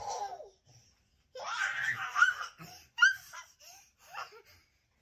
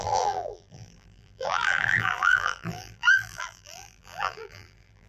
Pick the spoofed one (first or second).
second